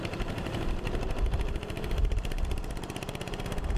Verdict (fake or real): fake